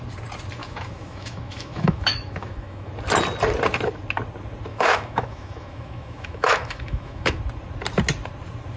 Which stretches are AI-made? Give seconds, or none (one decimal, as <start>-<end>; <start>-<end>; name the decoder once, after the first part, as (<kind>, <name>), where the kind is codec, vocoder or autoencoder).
0.6-2.9 (autoencoder, DAC-VAE); 4.7-7.4

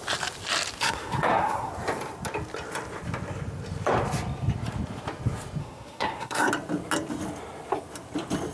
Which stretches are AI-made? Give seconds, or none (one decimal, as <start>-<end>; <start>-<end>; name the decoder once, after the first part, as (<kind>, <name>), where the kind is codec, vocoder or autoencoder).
0.8-1.7 (codec, SNAC); 5.6-6.5

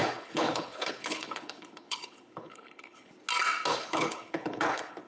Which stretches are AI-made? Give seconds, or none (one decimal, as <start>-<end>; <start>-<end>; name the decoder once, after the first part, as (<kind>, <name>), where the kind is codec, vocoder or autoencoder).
0.0-3.1 (codec, HILCodec); 3.7-5.1

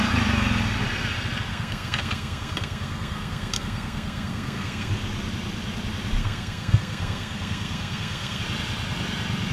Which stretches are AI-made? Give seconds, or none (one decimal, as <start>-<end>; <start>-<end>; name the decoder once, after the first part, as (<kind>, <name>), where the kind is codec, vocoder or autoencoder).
1.5-4.9 (codec, SNAC); 6.2-8.4

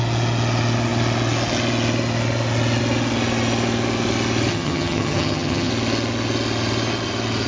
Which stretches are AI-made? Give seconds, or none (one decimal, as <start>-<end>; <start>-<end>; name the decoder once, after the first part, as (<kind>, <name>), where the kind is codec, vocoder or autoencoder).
4.5-5.7 (vocoder, HiFi-GAN)

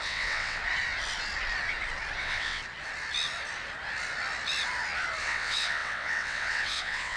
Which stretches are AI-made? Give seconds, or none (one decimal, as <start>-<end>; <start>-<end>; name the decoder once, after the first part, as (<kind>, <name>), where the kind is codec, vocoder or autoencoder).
0.0-0.6 (vocoder, WaveNeXt); 2.2-2.6; 5.2-7.2